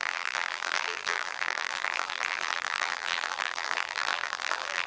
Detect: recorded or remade remade